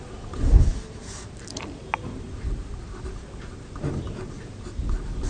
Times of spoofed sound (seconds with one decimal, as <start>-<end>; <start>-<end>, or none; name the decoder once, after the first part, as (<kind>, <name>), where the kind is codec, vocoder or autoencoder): none